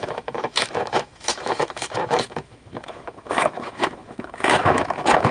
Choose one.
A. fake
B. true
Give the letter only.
A